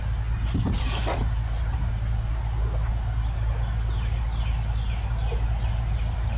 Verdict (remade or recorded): recorded